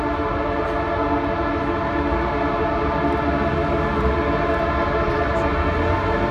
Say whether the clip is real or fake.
real